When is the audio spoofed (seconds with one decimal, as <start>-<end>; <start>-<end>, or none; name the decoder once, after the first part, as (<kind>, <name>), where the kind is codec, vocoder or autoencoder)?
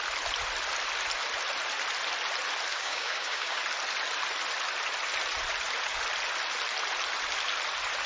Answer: 2.7-3.6 (codec, DAC)